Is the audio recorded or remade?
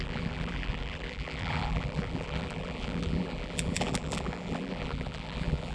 remade